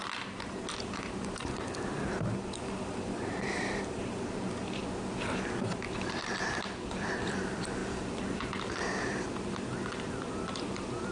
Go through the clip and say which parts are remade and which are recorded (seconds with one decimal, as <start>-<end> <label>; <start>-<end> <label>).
0.0-4.8 remade; 4.8-6.4 recorded; 6.4-7.8 remade; 7.8-9.0 recorded; 9.0-11.1 remade